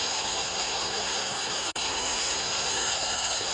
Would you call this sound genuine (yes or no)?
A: no